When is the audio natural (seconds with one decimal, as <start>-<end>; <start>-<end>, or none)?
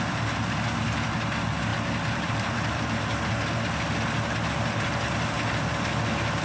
0.0-1.7; 2.8-6.4